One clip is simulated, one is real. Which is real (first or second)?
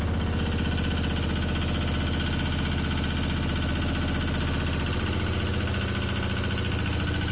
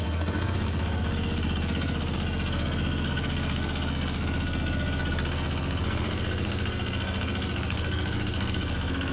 first